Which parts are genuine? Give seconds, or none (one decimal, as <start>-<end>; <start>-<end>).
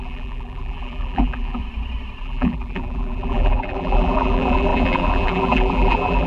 1.6-2.2